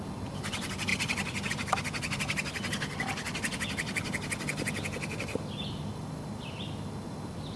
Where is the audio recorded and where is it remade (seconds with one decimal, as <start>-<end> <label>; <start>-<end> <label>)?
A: 0.0-7.6 recorded